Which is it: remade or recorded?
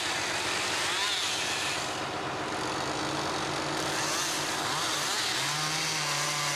recorded